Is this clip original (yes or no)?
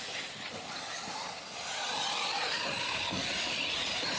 yes